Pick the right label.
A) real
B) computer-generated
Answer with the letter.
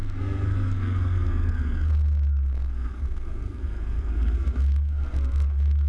B